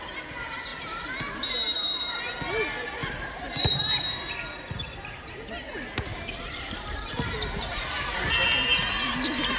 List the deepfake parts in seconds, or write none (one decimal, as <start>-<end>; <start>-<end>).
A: 0.7-1.3; 3.0-3.8; 6.1-8.3